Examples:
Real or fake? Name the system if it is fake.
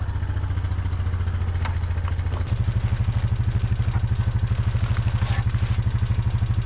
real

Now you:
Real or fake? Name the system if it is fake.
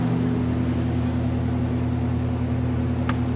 real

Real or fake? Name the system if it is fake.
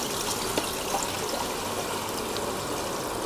real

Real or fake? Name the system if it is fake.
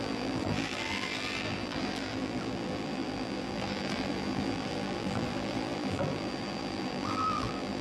fake, vocoder, BigVGAN v2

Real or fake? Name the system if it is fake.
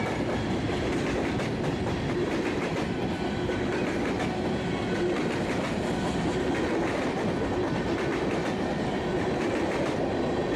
real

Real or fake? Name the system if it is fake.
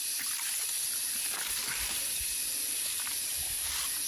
fake, vocoder, BigVGAN v2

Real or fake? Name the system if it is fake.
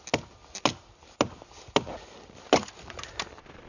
real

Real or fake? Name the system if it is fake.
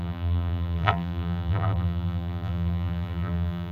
fake, vocoder, BigVGAN v2